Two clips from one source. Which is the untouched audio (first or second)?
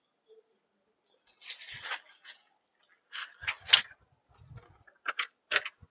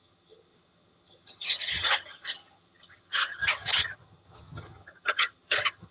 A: first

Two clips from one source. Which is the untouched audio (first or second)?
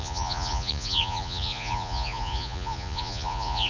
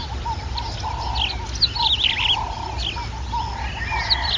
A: second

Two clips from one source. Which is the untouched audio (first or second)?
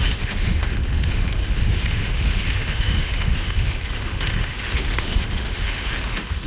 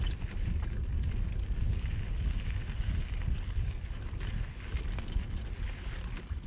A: second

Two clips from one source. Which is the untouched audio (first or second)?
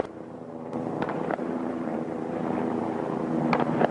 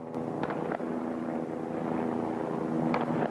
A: second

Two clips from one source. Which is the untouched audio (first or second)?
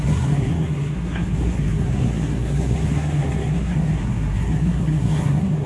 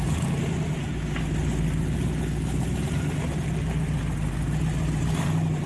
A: second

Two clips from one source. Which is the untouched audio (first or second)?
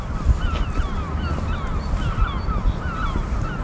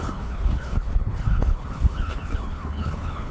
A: first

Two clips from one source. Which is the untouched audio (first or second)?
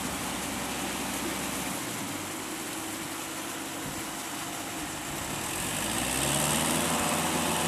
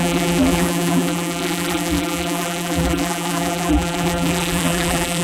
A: first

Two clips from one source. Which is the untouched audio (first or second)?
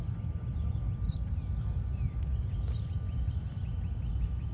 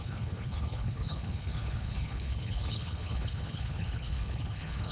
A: first